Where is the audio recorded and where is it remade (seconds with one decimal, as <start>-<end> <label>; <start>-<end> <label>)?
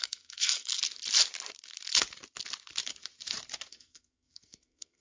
0.0-0.7 remade; 0.7-3.7 recorded; 3.7-5.0 remade